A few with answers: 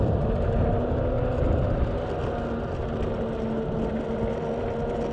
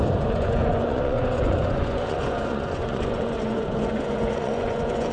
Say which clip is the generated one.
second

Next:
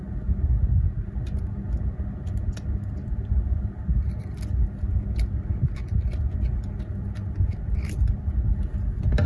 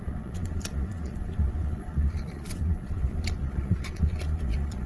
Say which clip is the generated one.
second